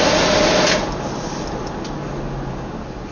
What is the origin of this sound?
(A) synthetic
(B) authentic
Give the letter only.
B